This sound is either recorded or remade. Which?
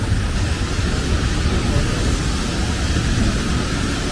recorded